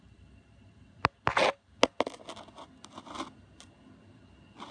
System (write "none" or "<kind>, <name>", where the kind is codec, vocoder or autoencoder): none